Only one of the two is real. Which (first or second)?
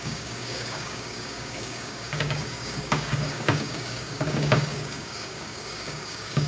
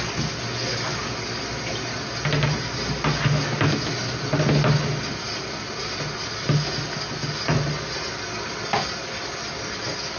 second